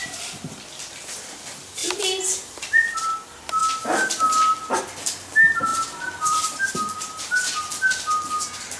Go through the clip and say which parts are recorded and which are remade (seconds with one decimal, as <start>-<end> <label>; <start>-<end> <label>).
0.0-1.8 recorded; 1.8-3.2 remade; 3.2-5.7 recorded; 5.7-6.7 remade; 6.7-8.8 recorded

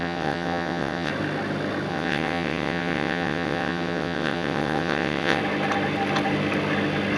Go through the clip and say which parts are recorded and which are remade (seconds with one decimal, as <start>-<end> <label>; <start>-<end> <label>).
0.0-1.1 remade; 1.1-1.9 recorded; 1.9-5.4 remade; 5.4-7.2 recorded

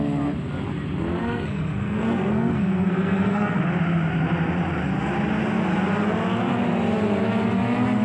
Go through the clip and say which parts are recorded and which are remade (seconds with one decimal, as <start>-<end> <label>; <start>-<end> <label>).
0.0-1.2 recorded; 1.2-3.6 remade; 3.6-8.0 recorded